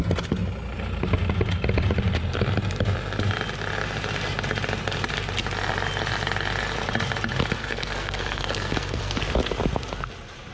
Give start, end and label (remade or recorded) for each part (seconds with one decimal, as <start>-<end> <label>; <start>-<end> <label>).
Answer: 0.0-7.6 recorded; 7.6-9.2 remade; 9.2-10.5 recorded